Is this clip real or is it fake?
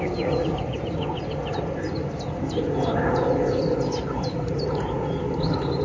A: real